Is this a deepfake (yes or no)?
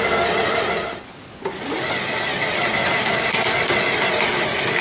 no